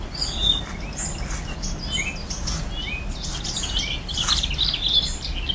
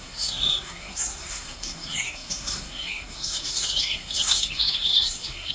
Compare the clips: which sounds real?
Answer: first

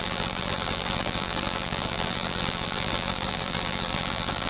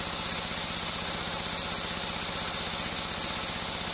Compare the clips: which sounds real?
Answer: second